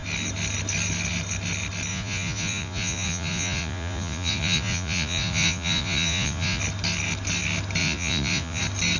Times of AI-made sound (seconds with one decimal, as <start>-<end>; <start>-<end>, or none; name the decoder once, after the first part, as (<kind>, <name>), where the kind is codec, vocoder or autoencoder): 1.9-6.6 (vocoder, Vocos); 7.8-8.6